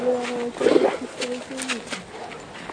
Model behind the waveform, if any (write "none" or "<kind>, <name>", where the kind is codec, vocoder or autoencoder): none